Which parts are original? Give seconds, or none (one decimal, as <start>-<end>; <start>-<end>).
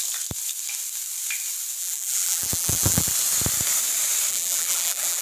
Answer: 0.0-1.8; 3.1-4.3